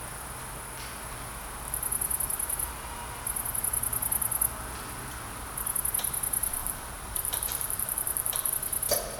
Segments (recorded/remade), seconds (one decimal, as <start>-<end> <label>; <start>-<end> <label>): 0.0-6.6 recorded; 6.6-8.5 remade; 8.5-9.2 recorded